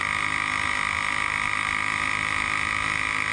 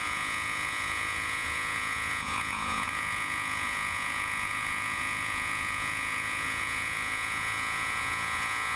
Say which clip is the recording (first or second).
first